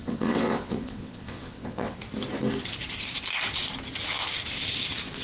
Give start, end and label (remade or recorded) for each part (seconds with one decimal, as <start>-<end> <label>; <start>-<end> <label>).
0.0-2.0 remade; 2.0-5.2 recorded

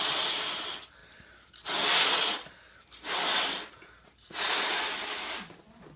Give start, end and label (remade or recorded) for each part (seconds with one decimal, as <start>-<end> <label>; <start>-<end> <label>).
0.0-6.0 recorded

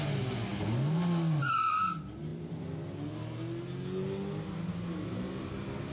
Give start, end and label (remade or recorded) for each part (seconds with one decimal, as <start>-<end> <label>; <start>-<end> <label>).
0.0-5.9 recorded

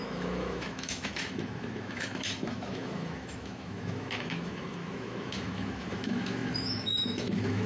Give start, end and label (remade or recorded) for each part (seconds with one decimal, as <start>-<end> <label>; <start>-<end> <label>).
0.0-7.7 remade

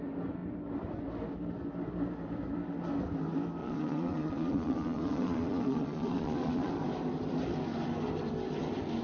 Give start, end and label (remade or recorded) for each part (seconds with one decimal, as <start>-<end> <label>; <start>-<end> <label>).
0.0-3.6 recorded; 3.6-6.7 remade; 6.7-9.0 recorded

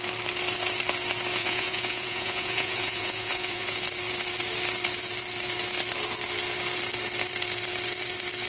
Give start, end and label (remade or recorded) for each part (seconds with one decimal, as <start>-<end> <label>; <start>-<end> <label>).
0.0-1.4 recorded; 1.4-3.8 remade; 3.8-8.5 recorded

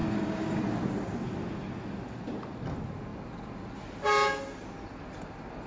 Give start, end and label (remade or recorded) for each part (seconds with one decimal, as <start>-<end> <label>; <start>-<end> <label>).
0.0-0.6 remade; 0.6-5.7 recorded

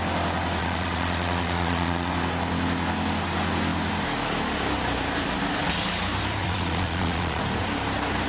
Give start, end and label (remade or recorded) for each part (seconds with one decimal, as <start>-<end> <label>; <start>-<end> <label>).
0.0-0.6 recorded; 0.6-2.1 remade; 2.1-6.4 recorded; 6.4-7.4 remade; 7.4-8.3 recorded